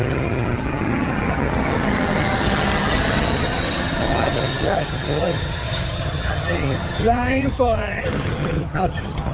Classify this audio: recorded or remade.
remade